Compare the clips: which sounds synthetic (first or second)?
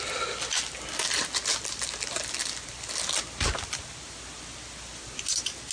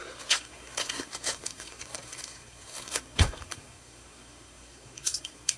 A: second